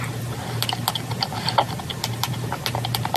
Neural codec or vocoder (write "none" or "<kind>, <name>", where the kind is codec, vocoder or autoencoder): none